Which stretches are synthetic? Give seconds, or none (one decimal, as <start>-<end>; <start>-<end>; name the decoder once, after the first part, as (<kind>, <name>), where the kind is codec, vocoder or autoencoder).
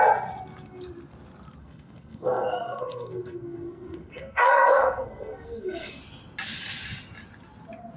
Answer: 1.6-6.0 (codec, SNAC)